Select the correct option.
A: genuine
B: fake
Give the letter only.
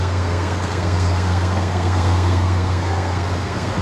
B